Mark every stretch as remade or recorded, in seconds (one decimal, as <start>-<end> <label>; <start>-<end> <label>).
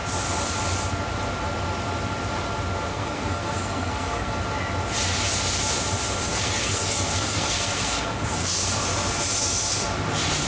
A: 0.0-2.9 recorded; 2.9-4.3 remade; 4.3-6.3 recorded; 6.3-8.8 remade; 8.8-10.5 recorded